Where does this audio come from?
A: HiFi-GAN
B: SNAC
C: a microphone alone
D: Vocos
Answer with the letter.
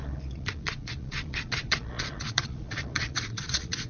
D